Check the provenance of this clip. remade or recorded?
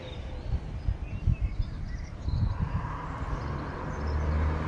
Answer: recorded